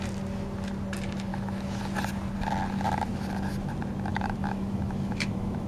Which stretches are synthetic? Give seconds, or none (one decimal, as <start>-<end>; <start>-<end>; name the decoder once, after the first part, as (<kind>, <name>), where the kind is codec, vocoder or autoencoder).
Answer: 1.3-1.8 (autoencoder, DAC-VAE); 4.1-5.7